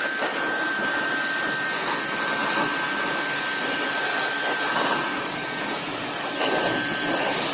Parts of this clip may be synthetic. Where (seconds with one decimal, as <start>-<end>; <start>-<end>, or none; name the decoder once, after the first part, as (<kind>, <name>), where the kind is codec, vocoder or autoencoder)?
none

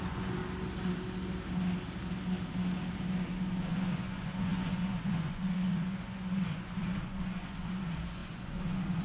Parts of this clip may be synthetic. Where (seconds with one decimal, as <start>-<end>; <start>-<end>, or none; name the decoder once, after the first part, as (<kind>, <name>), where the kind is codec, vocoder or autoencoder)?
0.0-0.4 (vocoder, Vocos); 3.7-9.0

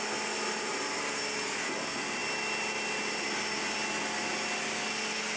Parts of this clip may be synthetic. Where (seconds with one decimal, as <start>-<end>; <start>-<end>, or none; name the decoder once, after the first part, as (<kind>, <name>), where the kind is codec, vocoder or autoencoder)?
none

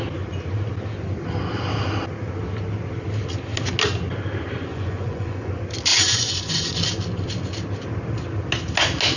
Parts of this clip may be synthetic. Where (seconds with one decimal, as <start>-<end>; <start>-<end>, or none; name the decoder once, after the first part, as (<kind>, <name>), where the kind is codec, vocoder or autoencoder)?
4.7-5.5 (vocoder, Vocos); 5.9-6.8

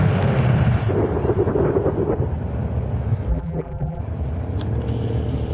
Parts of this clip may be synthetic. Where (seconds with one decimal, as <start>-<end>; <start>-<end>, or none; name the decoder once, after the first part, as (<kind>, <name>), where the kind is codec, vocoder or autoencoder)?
3.3-4.0 (vocoder, BigVGAN v2)

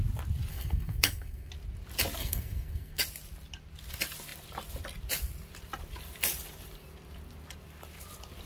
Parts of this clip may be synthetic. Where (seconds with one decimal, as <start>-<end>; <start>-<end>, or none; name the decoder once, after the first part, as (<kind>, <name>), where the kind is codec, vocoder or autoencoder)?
0.5-1.5 (codec, SNAC); 2.2-3.0